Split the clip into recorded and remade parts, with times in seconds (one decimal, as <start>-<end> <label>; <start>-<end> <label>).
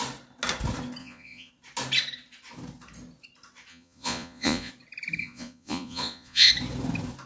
0.0-1.0 recorded; 1.0-1.5 remade; 1.5-3.7 recorded; 3.7-4.7 remade; 4.7-5.2 recorded; 5.2-6.5 remade; 6.5-7.3 recorded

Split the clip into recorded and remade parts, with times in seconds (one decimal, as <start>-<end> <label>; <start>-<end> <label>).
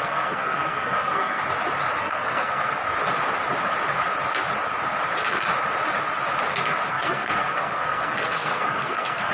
0.0-1.4 remade; 1.4-2.0 recorded; 2.0-2.8 remade; 2.8-6.9 recorded; 6.9-9.3 remade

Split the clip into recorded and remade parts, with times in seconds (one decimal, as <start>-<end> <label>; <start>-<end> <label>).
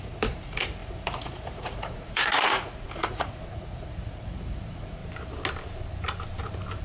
0.0-5.0 remade; 5.0-6.8 recorded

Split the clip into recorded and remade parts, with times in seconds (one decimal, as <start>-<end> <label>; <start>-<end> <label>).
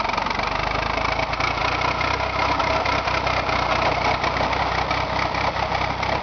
0.0-6.2 recorded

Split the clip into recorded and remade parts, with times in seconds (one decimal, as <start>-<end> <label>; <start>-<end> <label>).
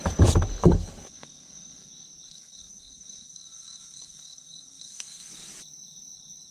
0.0-0.6 recorded; 0.6-1.9 remade; 1.9-2.3 recorded; 2.3-5.3 remade; 5.3-6.5 recorded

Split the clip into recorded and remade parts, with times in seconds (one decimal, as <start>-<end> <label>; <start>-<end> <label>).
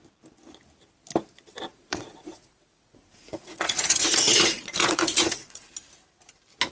0.0-1.7 recorded; 1.7-5.7 remade; 5.7-6.7 recorded